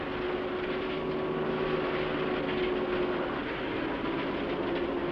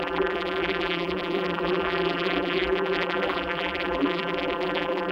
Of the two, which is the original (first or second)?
first